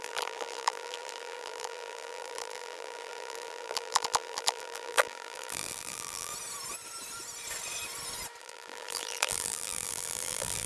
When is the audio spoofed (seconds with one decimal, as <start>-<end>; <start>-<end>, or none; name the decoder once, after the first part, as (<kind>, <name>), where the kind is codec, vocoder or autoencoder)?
0.0-6.3 (vocoder, BigVGAN v2); 8.4-10.7